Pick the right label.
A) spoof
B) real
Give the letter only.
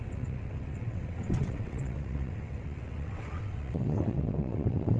A